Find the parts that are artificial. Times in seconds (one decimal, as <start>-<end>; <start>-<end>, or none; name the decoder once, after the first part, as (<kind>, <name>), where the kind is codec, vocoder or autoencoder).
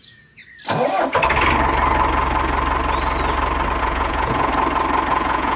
0.0-0.4 (vocoder, Vocos); 3.8-4.5; 5.1-5.6